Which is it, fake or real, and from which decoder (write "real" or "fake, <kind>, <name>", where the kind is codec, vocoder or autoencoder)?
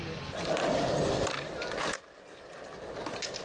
real